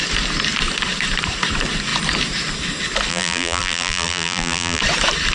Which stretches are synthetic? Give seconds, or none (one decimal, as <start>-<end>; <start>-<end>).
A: 3.1-4.8